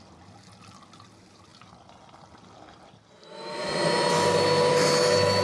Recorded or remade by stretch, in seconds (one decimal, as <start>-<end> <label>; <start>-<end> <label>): 0.0-5.4 recorded